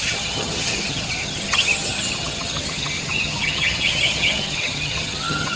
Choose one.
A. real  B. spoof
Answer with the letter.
B